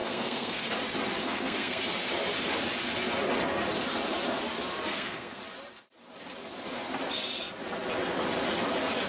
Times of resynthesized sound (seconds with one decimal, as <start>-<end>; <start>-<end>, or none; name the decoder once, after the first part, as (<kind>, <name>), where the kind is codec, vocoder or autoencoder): 0.0-0.7 (codec, SNAC); 1.2-1.8; 4.9-5.4